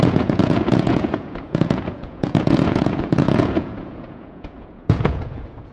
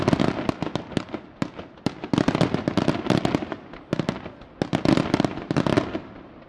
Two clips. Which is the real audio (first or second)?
second